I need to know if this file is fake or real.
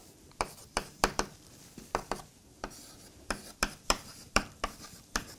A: fake